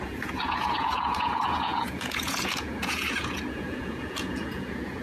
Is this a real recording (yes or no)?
no